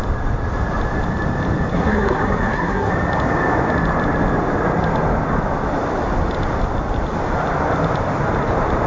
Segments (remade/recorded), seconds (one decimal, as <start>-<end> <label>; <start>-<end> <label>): 0.0-1.7 recorded; 1.7-2.9 remade; 2.9-8.9 recorded